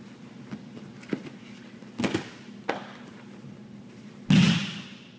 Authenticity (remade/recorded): recorded